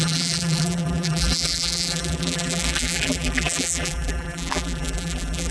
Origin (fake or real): fake